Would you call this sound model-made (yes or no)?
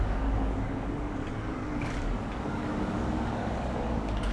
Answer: yes